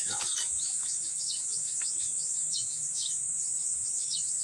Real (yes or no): no